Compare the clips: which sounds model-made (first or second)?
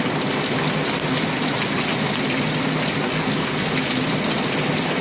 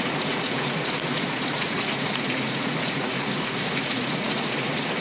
second